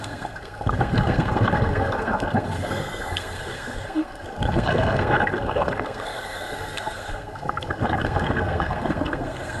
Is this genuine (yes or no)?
no